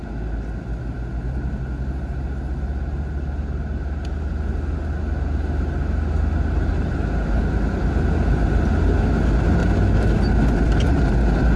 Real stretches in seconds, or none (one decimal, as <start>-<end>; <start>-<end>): 0.0-11.6